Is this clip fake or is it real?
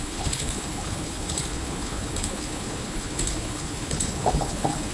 fake